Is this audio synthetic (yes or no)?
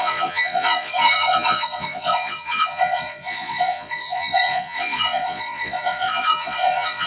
yes